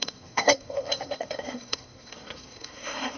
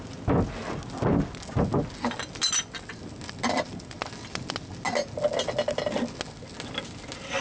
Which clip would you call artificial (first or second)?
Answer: first